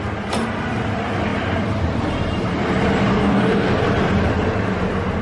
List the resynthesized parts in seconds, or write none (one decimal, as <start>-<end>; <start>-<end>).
3.1-3.7

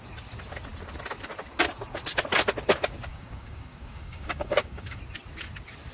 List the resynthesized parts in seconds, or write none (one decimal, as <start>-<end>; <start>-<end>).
3.1-5.0

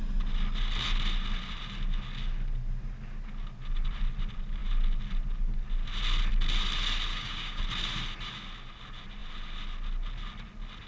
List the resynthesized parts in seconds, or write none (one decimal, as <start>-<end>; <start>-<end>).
7.1-7.6

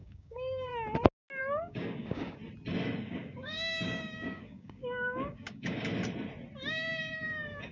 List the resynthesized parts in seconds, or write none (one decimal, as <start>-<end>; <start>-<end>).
0.0-0.7; 1.4-2.4; 3.0-5.9; 6.7-7.7

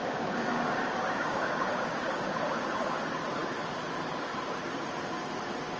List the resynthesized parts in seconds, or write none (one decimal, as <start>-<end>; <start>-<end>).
0.0-2.2